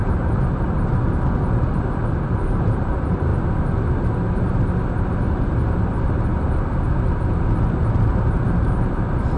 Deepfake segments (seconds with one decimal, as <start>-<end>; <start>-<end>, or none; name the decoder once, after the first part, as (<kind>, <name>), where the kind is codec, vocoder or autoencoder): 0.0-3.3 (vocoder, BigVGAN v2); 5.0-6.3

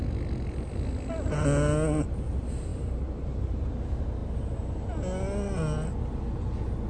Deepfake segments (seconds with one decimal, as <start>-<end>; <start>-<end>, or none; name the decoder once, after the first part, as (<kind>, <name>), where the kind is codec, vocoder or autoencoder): 2.7-3.6 (vocoder, BigVGAN v2)

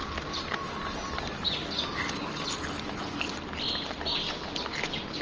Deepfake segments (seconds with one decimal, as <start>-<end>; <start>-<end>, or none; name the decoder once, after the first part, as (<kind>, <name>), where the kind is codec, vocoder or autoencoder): none

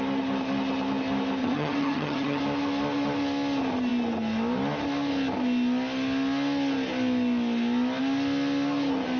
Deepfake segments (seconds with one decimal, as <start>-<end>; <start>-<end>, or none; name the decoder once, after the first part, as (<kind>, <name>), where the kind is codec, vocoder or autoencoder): 1.4-2.4 (vocoder, HiFi-GAN)

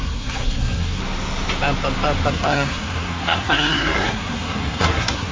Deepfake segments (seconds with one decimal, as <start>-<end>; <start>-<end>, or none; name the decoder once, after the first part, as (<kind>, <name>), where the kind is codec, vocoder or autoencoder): 0.0-1.0 (codec, SNAC); 2.3-5.3

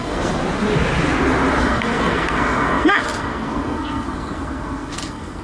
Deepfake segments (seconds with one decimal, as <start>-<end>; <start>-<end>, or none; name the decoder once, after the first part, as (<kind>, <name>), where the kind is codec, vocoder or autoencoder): 0.0-0.4 (codec, SNAC); 1.6-5.4

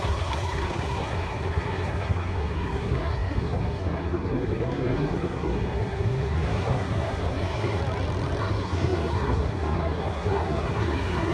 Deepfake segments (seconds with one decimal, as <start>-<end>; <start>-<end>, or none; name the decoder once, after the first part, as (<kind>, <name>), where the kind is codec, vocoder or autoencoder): 0.0-7.8 (codec, SNAC); 8.4-11.3